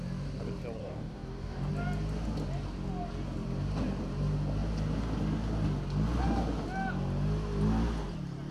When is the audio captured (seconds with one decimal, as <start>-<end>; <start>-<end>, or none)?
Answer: 0.0-0.8; 1.7-8.5